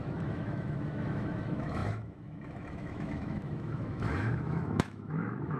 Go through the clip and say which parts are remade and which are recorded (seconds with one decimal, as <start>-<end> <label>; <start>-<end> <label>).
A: 0.0-5.6 remade